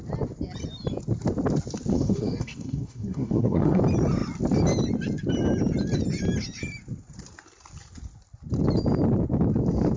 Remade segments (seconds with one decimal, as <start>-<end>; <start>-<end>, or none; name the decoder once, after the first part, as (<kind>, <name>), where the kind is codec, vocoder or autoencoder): 1.9-3.8 (codec, SNAC)